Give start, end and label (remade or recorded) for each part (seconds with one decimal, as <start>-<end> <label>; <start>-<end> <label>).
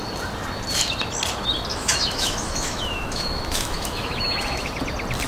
0.0-1.7 recorded; 1.7-4.7 remade; 4.7-5.3 recorded